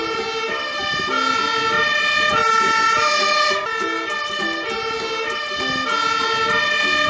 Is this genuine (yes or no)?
yes